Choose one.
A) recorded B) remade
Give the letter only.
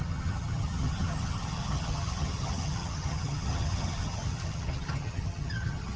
B